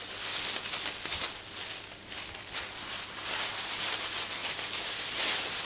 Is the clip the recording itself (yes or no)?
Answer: yes